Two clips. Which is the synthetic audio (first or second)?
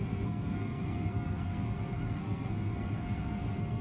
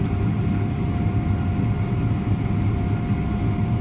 first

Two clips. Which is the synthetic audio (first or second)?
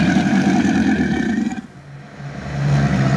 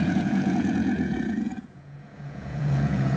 second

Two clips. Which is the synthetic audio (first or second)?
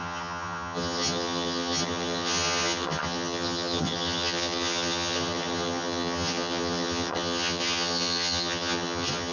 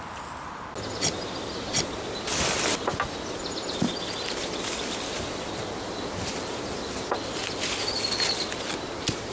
first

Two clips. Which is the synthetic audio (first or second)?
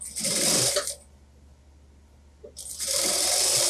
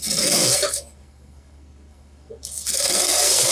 second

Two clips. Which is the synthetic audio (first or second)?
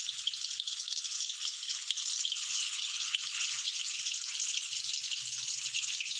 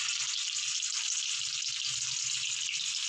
first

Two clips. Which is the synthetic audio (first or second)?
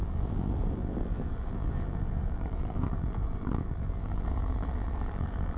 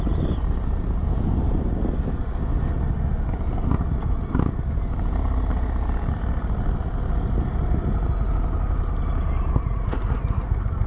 first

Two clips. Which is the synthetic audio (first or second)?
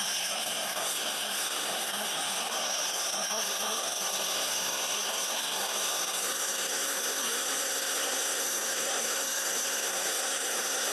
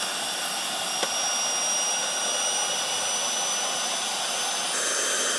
first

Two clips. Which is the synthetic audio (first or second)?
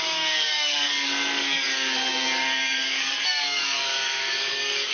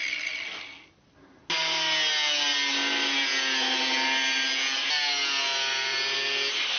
first